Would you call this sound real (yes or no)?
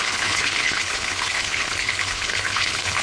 no